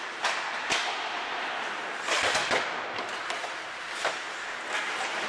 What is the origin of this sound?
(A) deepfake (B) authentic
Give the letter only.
B